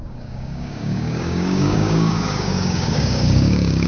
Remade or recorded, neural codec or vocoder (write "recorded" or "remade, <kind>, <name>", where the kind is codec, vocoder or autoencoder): remade, codec, DAC